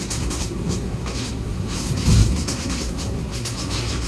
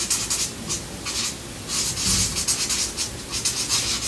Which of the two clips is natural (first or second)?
second